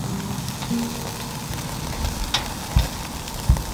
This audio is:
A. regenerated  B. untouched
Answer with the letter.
B